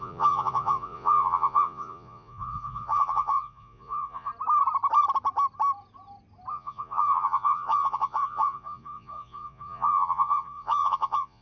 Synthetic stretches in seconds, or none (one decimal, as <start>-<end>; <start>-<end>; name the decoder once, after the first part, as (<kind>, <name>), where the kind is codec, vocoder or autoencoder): 0.0-4.3 (vocoder, Vocos); 6.5-11.4